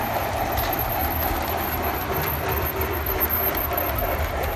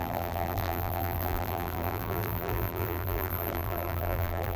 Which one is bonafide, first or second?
first